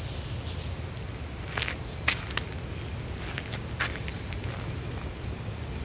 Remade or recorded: recorded